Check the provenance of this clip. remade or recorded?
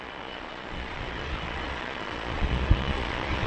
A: remade